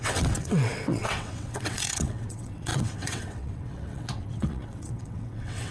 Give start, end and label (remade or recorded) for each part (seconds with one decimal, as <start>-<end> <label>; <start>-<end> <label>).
0.0-5.7 remade